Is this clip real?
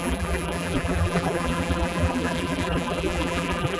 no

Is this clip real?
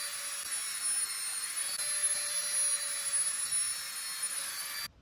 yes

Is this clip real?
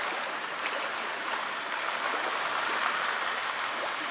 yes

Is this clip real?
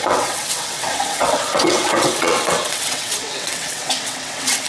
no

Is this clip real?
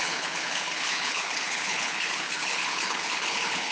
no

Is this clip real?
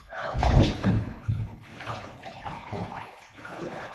no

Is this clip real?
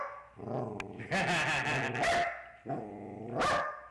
yes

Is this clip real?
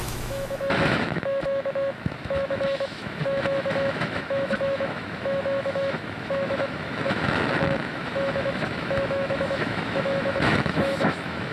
no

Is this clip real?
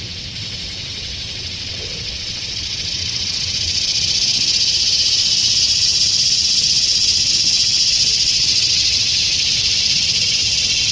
no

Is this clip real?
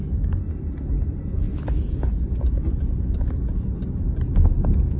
no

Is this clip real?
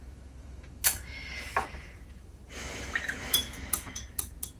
no